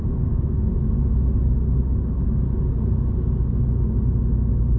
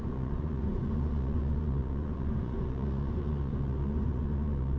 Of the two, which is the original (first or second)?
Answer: first